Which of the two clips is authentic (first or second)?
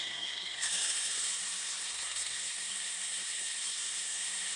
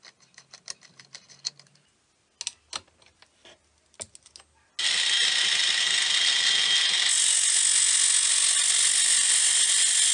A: second